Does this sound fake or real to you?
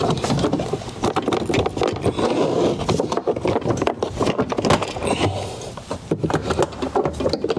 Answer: real